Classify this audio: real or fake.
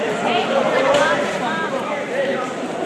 fake